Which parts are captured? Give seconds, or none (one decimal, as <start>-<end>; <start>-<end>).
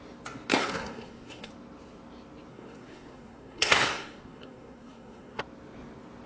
0.0-0.5; 1.5-2.5; 5.4-6.3